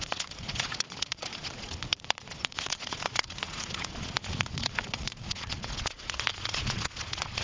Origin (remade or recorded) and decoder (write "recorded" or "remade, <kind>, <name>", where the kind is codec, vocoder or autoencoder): remade, vocoder, Vocos